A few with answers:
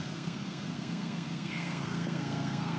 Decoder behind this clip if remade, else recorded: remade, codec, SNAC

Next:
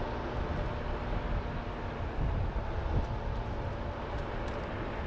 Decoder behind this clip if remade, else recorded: recorded